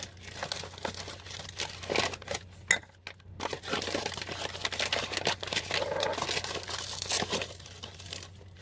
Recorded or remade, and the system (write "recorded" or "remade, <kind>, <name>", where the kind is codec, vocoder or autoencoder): recorded